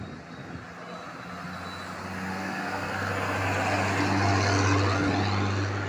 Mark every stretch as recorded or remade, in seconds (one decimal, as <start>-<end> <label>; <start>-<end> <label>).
0.0-2.3 recorded; 2.3-3.1 remade; 3.1-5.9 recorded